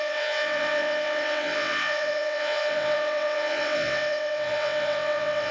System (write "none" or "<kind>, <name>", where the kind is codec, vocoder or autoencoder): vocoder, WaveNeXt